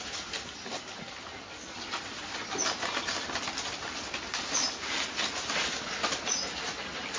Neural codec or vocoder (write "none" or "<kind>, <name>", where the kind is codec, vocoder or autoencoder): none